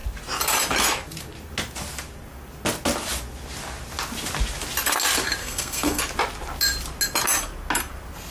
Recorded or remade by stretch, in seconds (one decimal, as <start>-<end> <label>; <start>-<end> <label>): 0.0-5.4 recorded; 5.4-6.0 remade; 6.0-8.3 recorded